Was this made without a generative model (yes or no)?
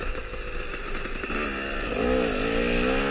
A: yes